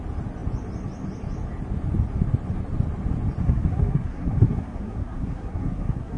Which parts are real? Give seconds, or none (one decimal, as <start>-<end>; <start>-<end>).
0.0-3.4